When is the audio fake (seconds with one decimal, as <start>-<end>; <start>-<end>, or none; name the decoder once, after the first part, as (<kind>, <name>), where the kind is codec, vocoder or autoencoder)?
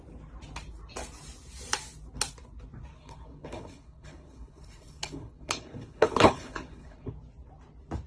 2.9-7.1 (codec, HILCodec)